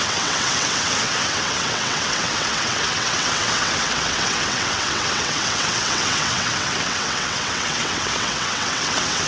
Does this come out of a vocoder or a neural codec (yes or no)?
yes